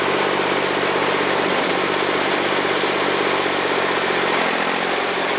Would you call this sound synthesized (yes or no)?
yes